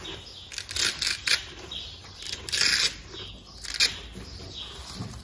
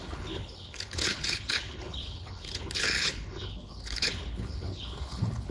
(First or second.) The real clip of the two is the first